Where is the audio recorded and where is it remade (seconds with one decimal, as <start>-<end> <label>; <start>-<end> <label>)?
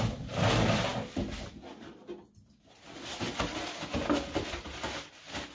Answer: 0.0-5.5 recorded